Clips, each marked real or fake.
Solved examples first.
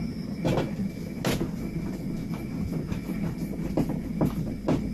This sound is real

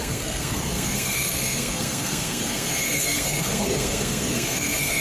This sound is fake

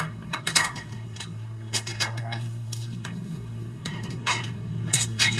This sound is fake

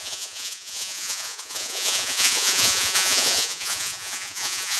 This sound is fake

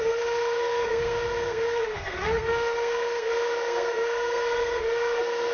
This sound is fake